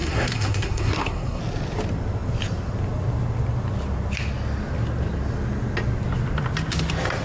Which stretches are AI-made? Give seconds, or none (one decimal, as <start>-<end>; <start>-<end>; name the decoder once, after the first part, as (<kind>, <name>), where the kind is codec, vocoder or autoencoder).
0.0-1.4 (codec, SNAC)